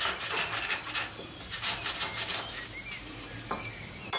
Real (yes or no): yes